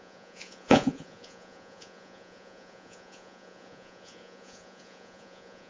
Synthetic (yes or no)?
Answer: yes